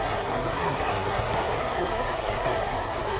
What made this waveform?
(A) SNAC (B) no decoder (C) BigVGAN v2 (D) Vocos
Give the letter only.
A